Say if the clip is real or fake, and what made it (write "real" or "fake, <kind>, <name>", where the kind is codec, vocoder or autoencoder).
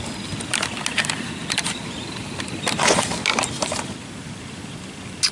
real